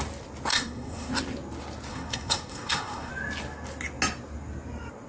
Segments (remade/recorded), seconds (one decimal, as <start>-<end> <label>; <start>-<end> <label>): 0.0-0.5 recorded; 0.5-1.1 remade; 1.1-1.9 recorded; 1.9-3.1 remade; 3.1-5.1 recorded